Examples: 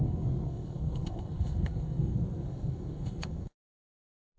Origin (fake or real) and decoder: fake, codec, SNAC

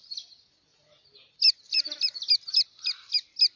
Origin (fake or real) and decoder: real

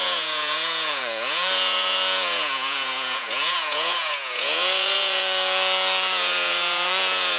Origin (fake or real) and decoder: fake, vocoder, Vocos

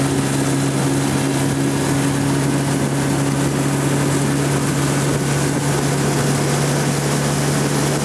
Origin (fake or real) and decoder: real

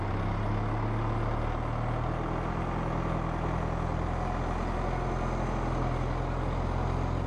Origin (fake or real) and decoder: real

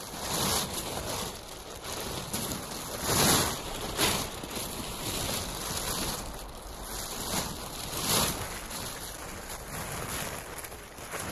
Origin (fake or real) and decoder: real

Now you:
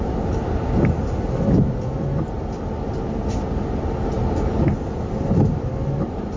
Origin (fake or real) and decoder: real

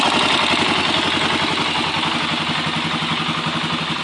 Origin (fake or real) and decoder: real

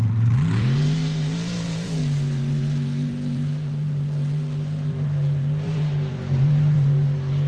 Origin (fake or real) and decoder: fake, vocoder, BigVGAN v2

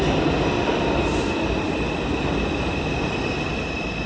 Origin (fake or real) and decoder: real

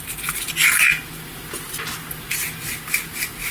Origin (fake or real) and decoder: real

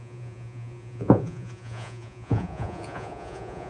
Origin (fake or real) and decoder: fake, vocoder, Vocos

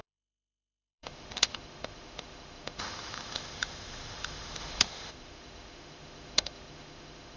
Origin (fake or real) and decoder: fake, autoencoder, DAC-VAE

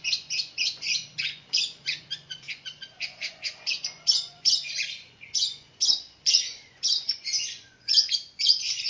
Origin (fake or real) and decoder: fake, vocoder, Vocos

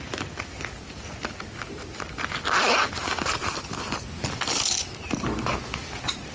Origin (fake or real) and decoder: real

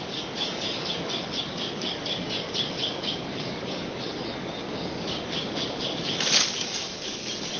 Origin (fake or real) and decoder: fake, codec, DAC